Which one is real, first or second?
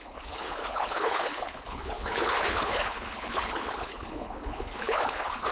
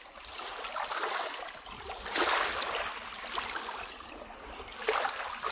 second